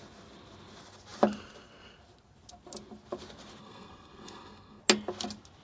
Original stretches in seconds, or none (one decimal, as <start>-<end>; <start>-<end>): 0.0-3.6; 4.8-5.6